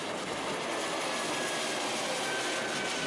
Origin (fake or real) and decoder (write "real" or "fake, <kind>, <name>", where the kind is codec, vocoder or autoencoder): real